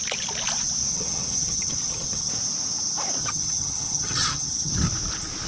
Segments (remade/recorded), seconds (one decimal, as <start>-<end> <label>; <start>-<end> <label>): 0.0-0.9 recorded; 0.9-2.3 remade; 2.3-3.2 recorded; 3.2-4.7 remade; 4.7-5.5 recorded